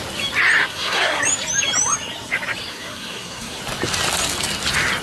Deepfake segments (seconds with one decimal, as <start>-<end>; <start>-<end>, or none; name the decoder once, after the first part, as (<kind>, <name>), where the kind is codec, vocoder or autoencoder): 0.7-1.2 (codec, SNAC); 2.7-3.6

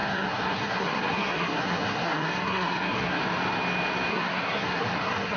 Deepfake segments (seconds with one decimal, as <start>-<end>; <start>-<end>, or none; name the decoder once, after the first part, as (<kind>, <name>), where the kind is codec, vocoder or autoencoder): 0.0-3.2 (codec, SNAC); 4.1-5.4

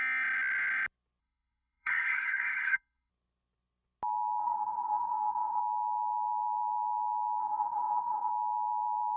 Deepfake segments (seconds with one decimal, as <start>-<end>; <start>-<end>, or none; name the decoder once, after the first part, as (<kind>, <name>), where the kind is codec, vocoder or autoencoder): 1.2-3.1 (codec, SNAC); 4.4-5.6; 7.4-8.3